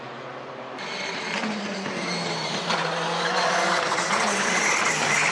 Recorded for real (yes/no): yes